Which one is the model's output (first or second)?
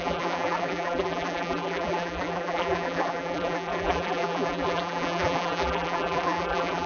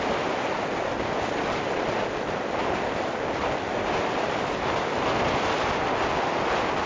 first